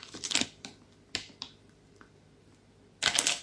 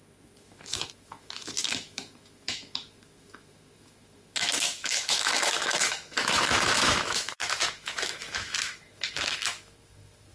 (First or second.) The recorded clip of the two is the first